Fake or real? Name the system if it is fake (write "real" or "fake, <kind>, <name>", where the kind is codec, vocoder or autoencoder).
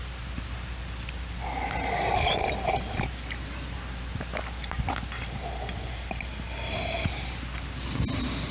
fake, vocoder, BigVGAN v2